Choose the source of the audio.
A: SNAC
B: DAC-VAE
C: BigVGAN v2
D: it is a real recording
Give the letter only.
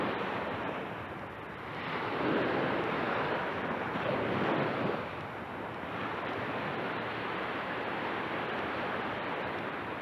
D